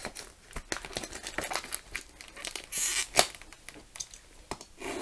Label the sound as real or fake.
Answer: real